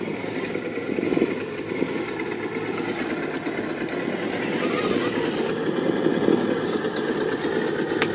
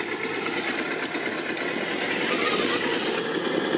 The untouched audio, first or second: first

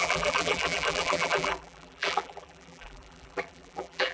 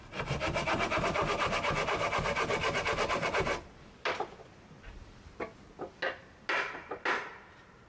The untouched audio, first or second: second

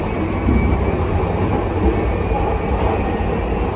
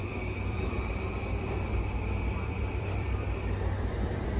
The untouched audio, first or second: first